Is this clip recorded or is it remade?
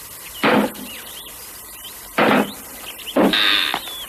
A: recorded